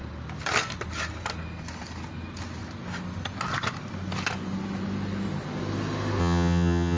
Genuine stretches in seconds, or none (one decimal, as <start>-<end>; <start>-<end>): 0.0-6.2